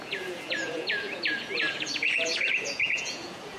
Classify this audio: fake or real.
fake